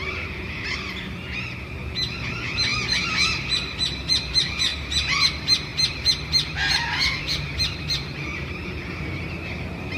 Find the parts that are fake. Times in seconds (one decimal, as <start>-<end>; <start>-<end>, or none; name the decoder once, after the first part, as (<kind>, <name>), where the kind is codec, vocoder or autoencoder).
0.0-2.7 (vocoder, BigVGAN v2); 4.3-4.7; 5.2-10.0

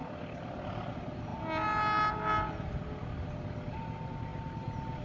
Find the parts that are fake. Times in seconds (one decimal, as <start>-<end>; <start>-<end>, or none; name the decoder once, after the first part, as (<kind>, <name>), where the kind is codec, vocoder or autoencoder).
none

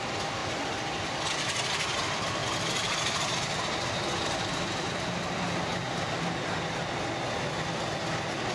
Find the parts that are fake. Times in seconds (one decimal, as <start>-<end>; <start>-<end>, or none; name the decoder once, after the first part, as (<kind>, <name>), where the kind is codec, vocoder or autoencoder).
none

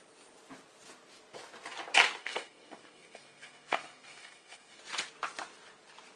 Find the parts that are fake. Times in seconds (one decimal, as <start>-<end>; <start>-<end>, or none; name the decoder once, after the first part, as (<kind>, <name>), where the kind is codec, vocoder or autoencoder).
2.2-4.8 (codec, SNAC)

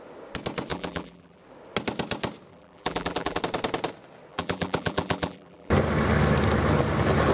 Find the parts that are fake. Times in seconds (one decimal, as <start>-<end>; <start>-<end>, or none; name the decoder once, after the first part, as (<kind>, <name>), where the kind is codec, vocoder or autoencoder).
0.7-1.4 (vocoder, BigVGAN v2); 2.5-3.4; 4.3-5.7